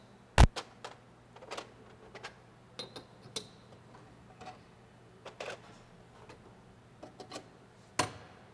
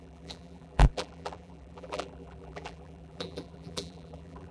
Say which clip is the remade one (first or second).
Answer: second